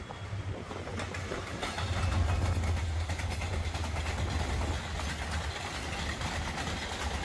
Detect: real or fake real